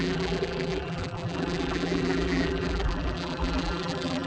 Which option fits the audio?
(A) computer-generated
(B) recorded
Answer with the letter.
A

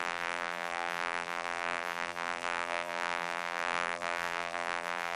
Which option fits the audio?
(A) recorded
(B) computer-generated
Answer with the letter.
B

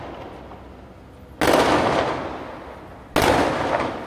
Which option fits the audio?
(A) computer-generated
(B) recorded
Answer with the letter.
B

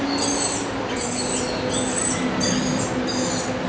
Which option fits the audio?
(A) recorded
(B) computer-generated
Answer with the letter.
A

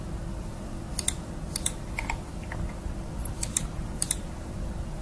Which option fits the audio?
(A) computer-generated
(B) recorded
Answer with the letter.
B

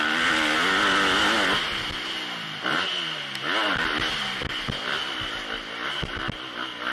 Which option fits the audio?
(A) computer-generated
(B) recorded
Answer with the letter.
B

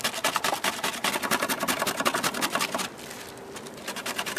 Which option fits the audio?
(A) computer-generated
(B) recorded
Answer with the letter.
B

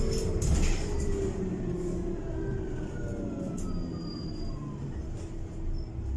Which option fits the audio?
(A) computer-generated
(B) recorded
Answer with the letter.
B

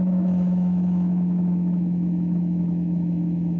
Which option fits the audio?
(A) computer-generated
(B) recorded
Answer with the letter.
A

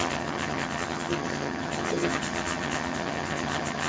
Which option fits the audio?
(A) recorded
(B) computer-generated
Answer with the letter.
B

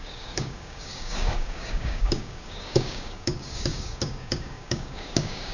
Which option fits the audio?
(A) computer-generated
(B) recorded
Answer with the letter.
A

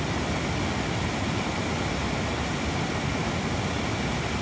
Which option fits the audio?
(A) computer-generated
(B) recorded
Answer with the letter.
B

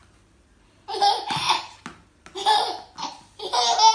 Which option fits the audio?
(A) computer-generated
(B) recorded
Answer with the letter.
B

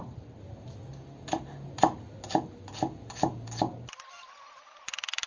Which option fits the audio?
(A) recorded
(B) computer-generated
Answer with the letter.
A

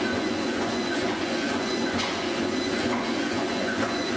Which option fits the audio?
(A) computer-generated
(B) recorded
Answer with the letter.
A